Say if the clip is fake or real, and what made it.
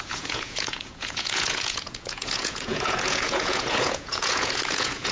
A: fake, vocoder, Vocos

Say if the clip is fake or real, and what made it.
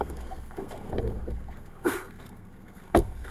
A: fake, codec, SNAC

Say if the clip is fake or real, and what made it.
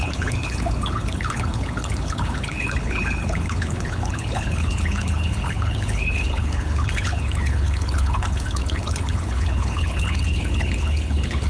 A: fake, codec, HILCodec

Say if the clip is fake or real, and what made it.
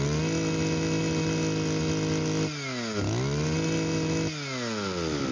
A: real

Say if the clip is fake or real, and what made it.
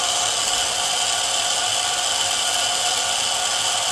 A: real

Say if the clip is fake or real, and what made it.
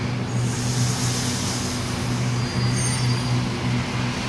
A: real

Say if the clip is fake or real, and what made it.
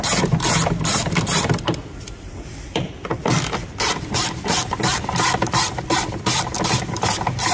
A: fake, vocoder, BigVGAN v2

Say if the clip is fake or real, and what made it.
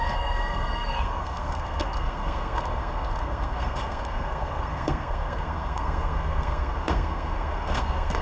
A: fake, codec, SNAC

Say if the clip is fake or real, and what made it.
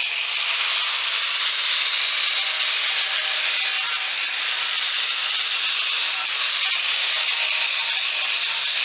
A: real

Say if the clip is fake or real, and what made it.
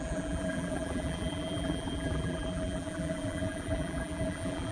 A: fake, vocoder, BigVGAN v2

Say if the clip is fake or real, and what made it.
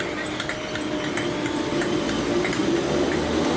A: real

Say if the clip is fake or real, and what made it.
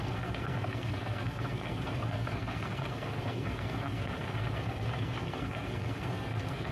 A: fake, codec, SNAC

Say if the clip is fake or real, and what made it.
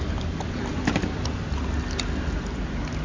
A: real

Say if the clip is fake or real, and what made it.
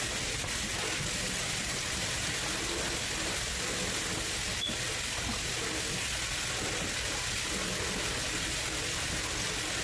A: real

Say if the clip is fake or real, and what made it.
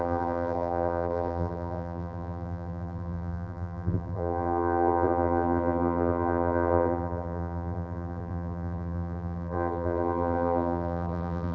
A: fake, vocoder, BigVGAN v2